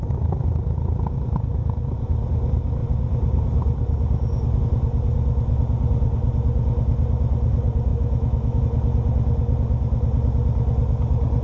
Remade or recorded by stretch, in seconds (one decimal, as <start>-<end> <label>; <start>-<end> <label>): 0.0-7.9 recorded; 7.9-8.6 remade; 8.6-11.4 recorded